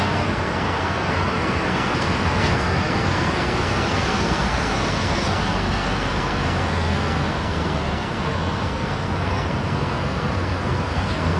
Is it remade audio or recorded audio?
remade